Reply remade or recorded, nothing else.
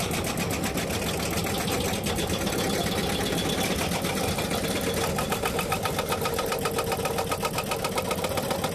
recorded